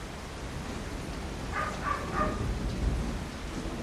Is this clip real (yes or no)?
yes